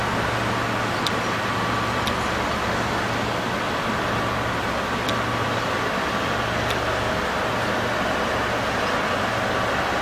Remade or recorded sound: recorded